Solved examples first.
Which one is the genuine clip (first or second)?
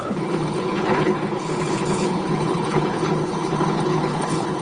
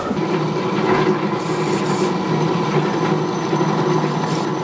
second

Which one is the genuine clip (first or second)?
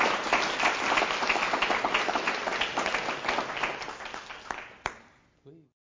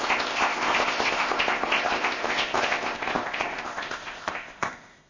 first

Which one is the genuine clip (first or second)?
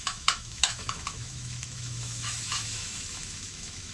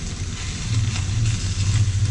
second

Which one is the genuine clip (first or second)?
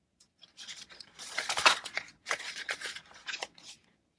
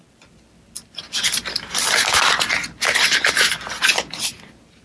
second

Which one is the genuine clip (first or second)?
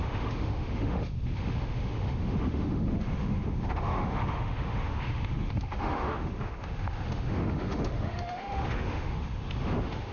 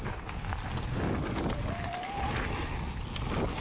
second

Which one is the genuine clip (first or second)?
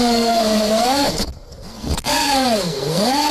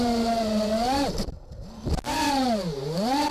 second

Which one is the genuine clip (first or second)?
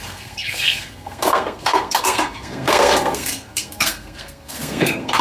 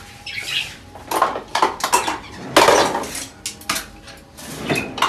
second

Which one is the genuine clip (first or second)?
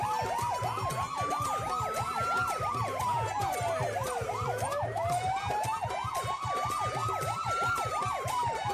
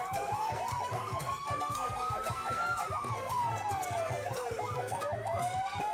first